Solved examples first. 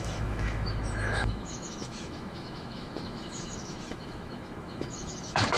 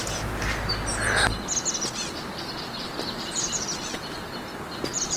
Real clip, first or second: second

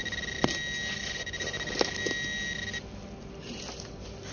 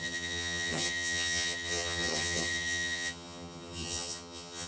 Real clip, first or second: first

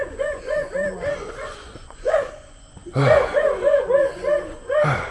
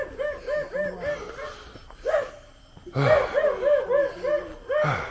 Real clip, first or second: second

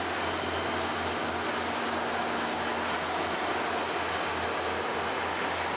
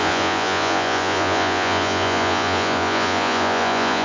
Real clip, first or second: first